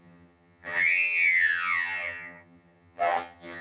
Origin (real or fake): fake